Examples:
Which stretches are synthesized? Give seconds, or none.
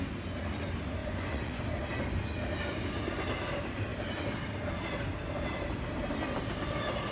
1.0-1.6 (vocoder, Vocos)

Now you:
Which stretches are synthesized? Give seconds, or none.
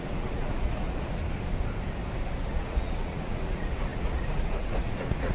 0.0-1.2 (vocoder, Vocos); 2.5-5.3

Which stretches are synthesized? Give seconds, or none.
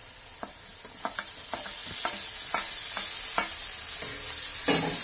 none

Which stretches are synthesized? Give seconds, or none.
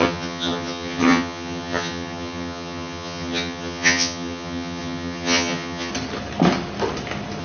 0.0-5.9 (vocoder, HiFi-GAN)